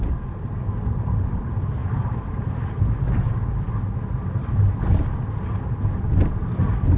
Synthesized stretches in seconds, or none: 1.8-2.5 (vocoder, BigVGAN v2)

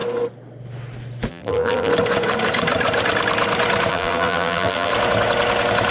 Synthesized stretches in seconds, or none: 1.3-1.9 (vocoder, BigVGAN v2); 3.9-4.9

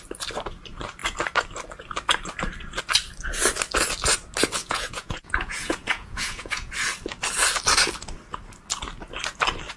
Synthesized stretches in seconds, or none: 4.6-6.7 (vocoder, Vocos)

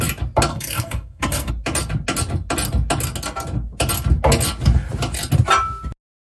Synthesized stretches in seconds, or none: 0.5-1.5 (codec, SNAC)

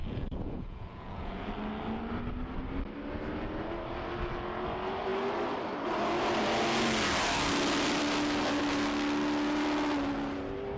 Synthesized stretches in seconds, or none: 0.0-1.5 (vocoder, Vocos)

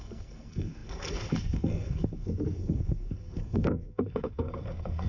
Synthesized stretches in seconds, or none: 0.0-5.1 (codec, SNAC)

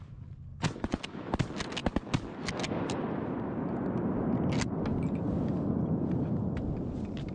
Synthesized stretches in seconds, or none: 0.5-1.0 (vocoder, Vocos)